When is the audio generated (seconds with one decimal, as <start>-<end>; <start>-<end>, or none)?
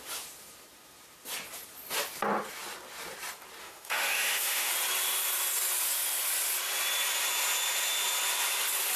3.6-4.7